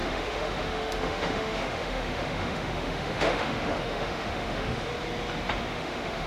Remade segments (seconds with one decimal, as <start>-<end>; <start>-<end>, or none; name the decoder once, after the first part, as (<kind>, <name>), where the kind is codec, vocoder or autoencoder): 0.0-4.9 (autoencoder, DAC-VAE); 5.6-6.3